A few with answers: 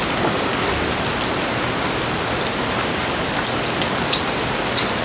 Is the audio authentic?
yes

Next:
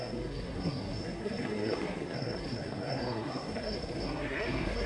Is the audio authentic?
no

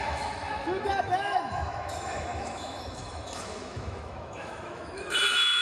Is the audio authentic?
no